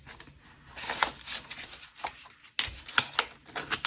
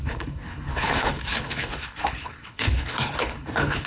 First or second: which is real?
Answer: first